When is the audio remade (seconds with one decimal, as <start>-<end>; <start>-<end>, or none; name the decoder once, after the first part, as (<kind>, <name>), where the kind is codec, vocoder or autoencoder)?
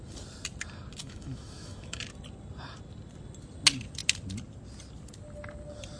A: 1.0-2.0 (autoencoder, DAC-VAE)